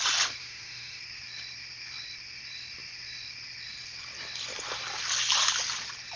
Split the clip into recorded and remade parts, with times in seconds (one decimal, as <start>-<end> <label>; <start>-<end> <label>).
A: 0.0-0.4 recorded; 0.4-1.0 remade; 1.0-6.2 recorded